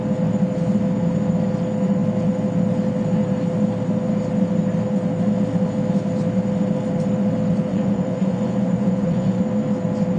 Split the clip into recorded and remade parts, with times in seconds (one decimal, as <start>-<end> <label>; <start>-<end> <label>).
0.0-7.7 recorded; 7.7-9.4 remade; 9.4-10.2 recorded